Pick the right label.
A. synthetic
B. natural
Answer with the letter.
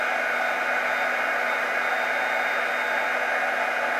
B